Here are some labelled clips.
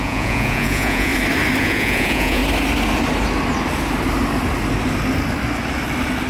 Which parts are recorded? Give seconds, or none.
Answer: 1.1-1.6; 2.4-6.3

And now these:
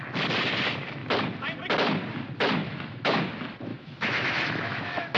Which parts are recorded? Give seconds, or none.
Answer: 0.0-2.6; 3.3-3.7

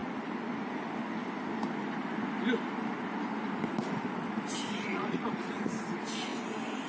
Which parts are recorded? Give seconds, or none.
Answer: 0.0-4.6; 5.7-6.9

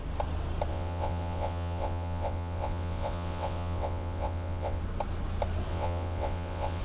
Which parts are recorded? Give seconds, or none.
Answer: 0.0-0.7; 4.8-5.7